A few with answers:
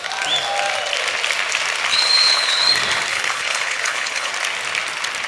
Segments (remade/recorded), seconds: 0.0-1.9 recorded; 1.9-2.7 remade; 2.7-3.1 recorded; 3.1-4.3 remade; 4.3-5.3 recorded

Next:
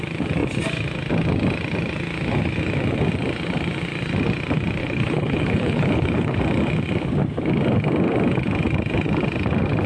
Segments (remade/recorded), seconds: 0.0-4.8 recorded; 4.8-6.4 remade; 6.4-9.9 recorded

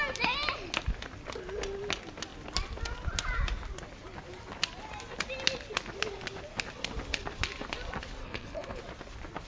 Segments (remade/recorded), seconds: 0.0-8.2 recorded; 8.2-8.8 remade; 8.8-9.5 recorded